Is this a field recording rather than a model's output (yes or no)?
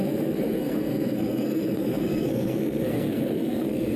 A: no